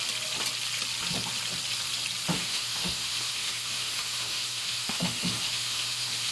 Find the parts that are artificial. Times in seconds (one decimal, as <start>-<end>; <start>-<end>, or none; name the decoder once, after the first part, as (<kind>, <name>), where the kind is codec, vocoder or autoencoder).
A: 2.3-6.3 (autoencoder, DAC-VAE)